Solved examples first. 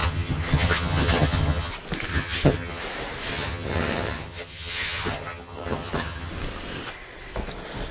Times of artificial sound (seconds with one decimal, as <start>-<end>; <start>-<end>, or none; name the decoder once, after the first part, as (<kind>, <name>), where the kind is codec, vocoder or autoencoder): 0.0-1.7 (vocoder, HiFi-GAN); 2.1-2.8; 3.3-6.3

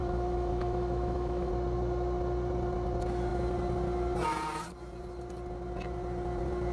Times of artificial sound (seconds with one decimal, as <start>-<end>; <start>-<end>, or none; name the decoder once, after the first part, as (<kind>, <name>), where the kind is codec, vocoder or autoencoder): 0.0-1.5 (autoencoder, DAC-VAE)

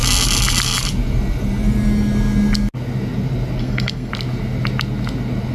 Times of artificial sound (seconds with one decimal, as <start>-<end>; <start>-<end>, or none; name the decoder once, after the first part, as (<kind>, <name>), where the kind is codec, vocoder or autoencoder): 3.6-4.1 (codec, SNAC)

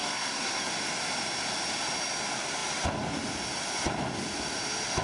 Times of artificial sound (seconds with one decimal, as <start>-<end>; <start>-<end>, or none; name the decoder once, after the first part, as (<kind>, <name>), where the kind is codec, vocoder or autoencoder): 0.0-0.7 (codec, SNAC)

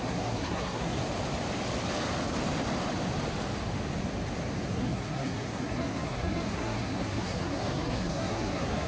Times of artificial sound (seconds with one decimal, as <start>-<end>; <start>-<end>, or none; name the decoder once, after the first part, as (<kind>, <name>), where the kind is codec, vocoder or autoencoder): 0.0-1.0 (codec, SNAC); 4.7-8.9

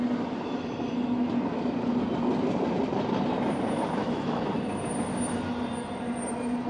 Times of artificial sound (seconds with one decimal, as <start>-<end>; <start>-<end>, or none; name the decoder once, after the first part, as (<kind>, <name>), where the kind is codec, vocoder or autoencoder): 4.0-4.5 (autoencoder, DAC-VAE)

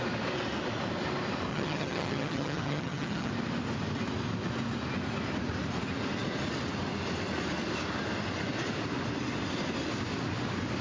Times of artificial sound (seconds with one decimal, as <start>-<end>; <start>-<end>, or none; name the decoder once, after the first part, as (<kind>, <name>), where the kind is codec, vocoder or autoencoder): 1.5-3.3 (vocoder, HiFi-GAN)